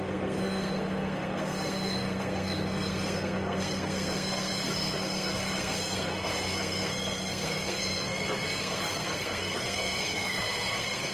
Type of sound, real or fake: fake